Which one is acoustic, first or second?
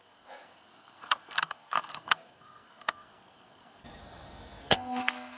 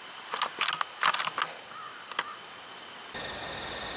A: second